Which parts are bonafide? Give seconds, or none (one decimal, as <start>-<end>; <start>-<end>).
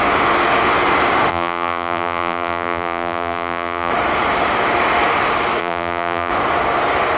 0.0-1.3; 3.9-5.6; 6.3-7.2